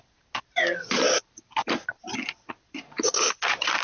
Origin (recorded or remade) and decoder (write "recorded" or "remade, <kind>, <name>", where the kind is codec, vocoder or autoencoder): recorded